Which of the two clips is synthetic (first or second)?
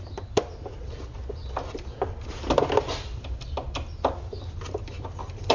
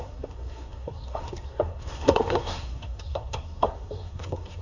second